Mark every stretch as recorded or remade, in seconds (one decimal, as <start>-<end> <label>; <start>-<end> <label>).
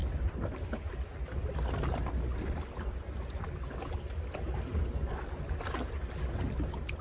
0.0-7.0 recorded